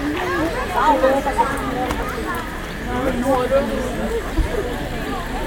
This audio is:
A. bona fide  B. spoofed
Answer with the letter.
A